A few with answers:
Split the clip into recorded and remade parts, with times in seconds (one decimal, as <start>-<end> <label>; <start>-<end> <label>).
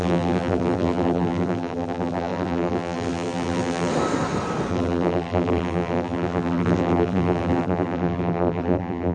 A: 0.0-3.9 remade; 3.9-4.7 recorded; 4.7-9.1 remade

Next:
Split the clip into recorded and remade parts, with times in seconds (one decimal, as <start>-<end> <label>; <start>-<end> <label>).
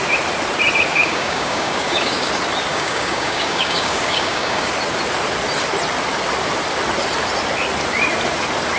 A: 0.0-0.9 recorded; 0.9-2.3 remade; 2.3-2.7 recorded; 2.7-4.7 remade; 4.7-8.8 recorded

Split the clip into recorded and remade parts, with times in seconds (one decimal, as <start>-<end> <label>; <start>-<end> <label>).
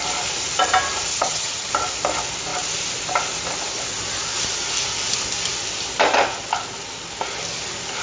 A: 0.0-1.1 recorded; 1.1-1.7 remade; 1.7-8.0 recorded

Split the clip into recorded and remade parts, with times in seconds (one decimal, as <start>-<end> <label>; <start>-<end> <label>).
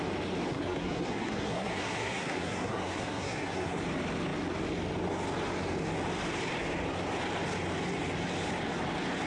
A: 0.0-0.5 recorded; 0.5-3.8 remade; 3.8-9.3 recorded